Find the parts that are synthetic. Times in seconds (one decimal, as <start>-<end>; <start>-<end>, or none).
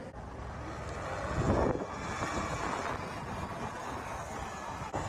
none